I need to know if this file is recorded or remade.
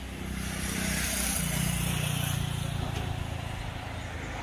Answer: recorded